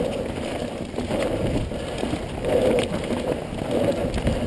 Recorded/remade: recorded